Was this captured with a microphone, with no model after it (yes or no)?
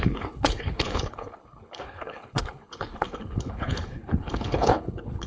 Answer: no